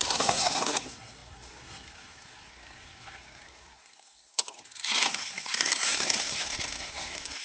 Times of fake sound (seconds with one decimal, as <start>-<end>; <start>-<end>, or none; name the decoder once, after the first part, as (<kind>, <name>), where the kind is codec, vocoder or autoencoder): 0.0-7.4 (codec, SNAC)